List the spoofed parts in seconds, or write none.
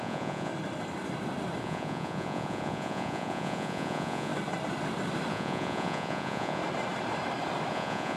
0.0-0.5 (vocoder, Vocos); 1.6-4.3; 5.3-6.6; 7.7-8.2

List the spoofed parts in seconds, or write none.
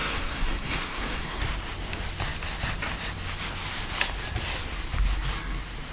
0.0-1.4 (codec, SNAC)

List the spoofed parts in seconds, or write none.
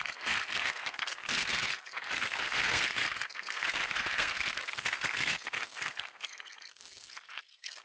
0.0-7.8 (codec, SNAC)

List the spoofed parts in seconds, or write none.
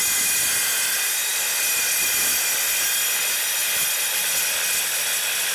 none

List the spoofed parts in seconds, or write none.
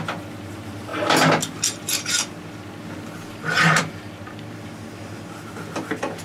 none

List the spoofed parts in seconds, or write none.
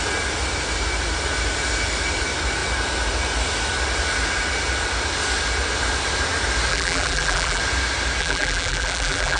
6.7-7.6 (vocoder, BigVGAN v2); 8.2-9.4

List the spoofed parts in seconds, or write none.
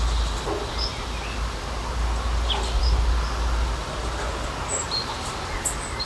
none